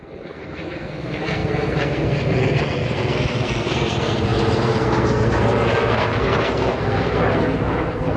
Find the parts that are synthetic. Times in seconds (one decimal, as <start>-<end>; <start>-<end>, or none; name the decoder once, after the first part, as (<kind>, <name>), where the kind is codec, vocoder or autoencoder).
0.0-8.2 (codec, SNAC)